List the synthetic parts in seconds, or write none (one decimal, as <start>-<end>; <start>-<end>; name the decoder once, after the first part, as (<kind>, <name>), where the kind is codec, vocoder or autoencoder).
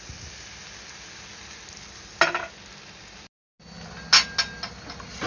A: none